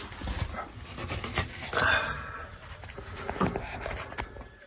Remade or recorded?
recorded